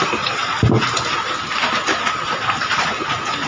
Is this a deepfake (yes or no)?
no